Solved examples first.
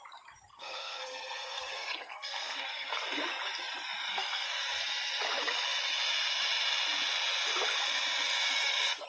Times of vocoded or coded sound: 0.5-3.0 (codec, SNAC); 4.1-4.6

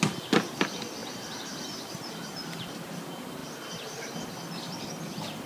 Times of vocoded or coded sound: none